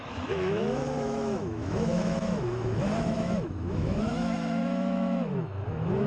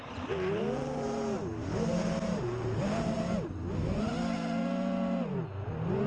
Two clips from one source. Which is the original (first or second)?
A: second